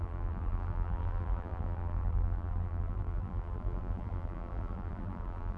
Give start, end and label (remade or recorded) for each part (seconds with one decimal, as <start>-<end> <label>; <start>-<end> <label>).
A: 0.0-5.6 remade